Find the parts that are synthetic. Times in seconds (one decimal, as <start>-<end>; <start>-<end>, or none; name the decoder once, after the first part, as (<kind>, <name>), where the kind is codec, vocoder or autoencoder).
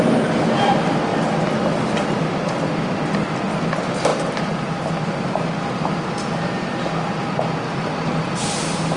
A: 4.1-5.1 (vocoder, BigVGAN v2)